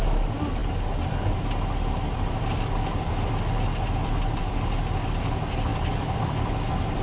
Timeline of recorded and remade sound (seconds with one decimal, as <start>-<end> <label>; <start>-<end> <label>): 0.0-7.0 recorded